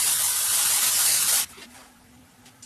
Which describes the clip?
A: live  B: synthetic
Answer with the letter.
B